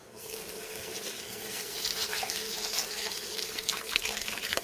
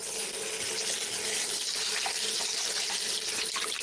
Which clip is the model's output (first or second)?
first